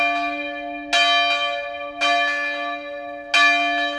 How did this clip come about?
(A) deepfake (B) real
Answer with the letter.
B